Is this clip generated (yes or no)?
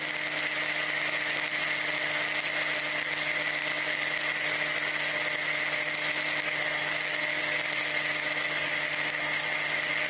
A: no